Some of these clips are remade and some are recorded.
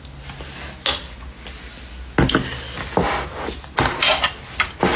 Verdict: recorded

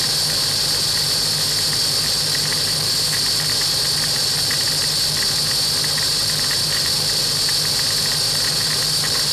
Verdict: recorded